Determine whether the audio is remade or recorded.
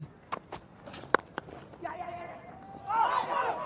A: recorded